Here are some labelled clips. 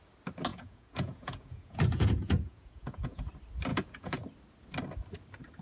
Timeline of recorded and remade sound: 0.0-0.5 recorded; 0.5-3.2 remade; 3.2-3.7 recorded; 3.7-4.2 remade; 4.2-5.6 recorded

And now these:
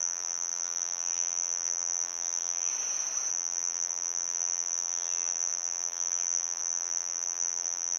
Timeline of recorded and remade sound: 0.0-2.7 remade; 2.7-3.3 recorded; 3.3-8.0 remade

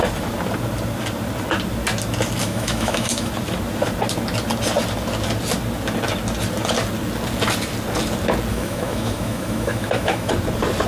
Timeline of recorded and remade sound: 0.0-2.4 recorded; 2.4-3.3 remade; 3.3-8.5 recorded; 8.5-10.3 remade; 10.3-10.9 recorded

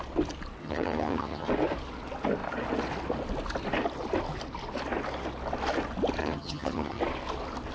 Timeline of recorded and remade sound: 0.0-0.6 recorded; 0.6-1.5 remade; 1.5-6.2 recorded; 6.2-7.0 remade; 7.0-7.7 recorded

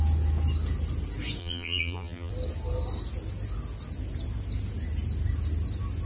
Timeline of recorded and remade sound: 0.0-1.4 recorded; 1.4-2.3 remade; 2.3-6.1 recorded